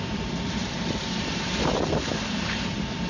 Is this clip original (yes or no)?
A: no